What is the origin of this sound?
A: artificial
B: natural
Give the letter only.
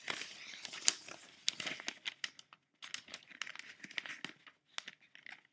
B